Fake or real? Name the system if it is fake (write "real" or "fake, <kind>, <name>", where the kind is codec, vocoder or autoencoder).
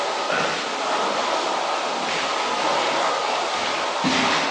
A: real